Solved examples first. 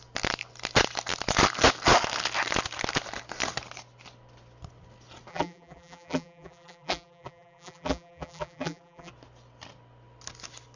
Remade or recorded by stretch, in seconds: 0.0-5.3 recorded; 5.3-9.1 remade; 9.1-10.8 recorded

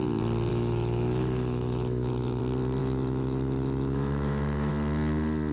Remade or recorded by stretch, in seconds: 0.0-0.5 recorded; 0.5-2.4 remade; 2.4-2.8 recorded; 2.8-4.7 remade; 4.7-5.5 recorded

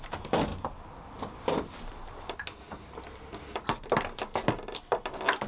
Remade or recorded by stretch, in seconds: 0.0-5.5 recorded

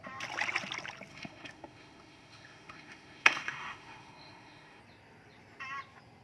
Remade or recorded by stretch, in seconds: 0.0-1.1 recorded; 1.1-4.8 remade; 4.8-6.2 recorded

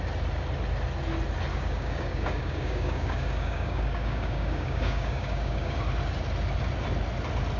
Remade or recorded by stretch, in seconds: 0.0-1.5 recorded; 1.5-5.8 remade; 5.8-7.6 recorded

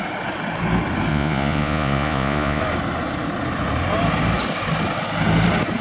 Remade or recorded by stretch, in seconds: 0.0-1.1 recorded; 1.1-2.6 remade; 2.6-5.8 recorded

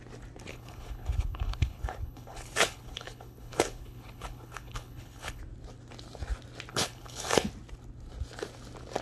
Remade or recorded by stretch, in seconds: 0.0-0.5 recorded; 0.5-5.4 remade; 5.4-6.7 recorded; 6.7-7.5 remade; 7.5-9.0 recorded